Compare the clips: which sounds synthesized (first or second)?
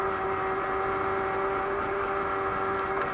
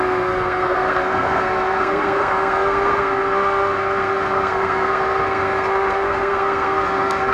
second